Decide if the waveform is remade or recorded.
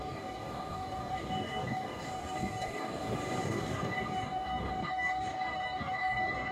remade